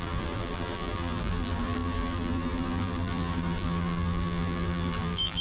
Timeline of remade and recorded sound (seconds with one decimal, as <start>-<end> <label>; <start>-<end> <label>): 0.0-5.4 remade